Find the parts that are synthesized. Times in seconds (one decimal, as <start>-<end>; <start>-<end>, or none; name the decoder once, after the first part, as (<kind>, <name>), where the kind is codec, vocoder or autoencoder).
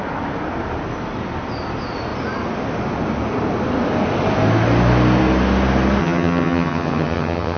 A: 6.0-7.6 (vocoder, HiFi-GAN)